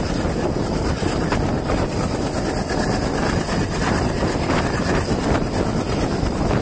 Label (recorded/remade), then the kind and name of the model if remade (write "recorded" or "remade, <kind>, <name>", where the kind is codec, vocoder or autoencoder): recorded